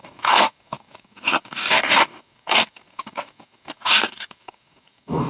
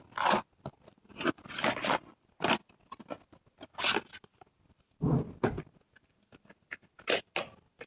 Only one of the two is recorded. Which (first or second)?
second